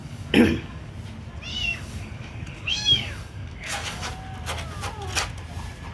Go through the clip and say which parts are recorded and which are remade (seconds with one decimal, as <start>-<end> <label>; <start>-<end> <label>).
0.0-0.9 remade; 0.9-1.5 recorded; 1.5-4.1 remade; 4.1-5.9 recorded